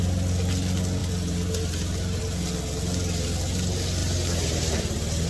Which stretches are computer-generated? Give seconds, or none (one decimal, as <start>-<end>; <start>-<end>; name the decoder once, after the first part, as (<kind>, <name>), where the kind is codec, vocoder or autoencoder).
1.0-2.2 (vocoder, BigVGAN v2); 4.0-4.7